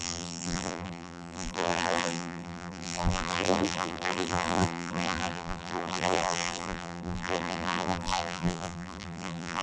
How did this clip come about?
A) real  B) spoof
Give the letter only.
B